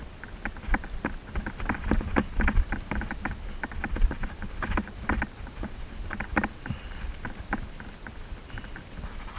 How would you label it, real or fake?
real